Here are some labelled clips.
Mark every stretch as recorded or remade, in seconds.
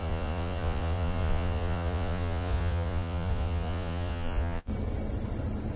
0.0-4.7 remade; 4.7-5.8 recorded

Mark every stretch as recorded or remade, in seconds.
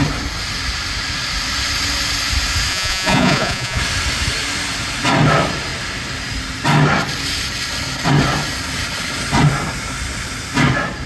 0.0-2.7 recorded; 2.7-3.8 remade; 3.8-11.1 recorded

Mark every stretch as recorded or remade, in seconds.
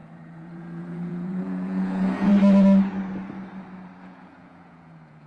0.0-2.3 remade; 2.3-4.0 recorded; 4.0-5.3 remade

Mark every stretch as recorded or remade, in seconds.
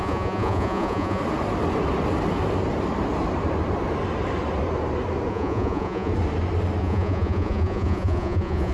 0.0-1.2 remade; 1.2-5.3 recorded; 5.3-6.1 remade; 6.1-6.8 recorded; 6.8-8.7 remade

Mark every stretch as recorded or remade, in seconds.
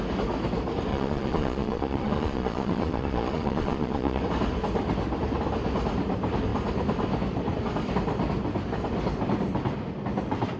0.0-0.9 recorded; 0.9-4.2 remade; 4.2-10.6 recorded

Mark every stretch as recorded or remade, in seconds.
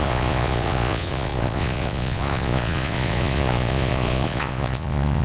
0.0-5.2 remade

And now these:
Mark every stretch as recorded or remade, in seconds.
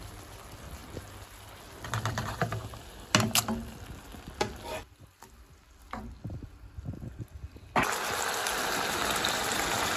0.0-10.0 recorded